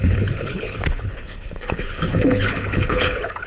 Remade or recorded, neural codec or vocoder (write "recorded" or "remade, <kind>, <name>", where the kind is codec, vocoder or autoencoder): remade, codec, HILCodec